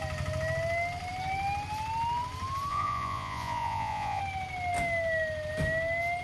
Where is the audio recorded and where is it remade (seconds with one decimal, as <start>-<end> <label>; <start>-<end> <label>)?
0.0-2.7 recorded; 2.7-4.2 remade; 4.2-6.2 recorded